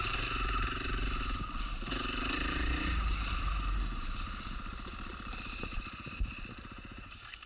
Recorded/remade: remade